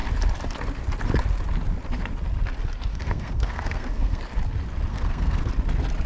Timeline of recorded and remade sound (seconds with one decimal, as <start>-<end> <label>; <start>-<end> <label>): 0.0-2.9 recorded; 2.9-4.2 remade; 4.2-4.9 recorded; 4.9-5.5 remade; 5.5-6.1 recorded